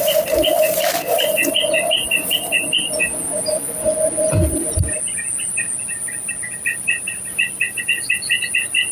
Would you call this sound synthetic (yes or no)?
no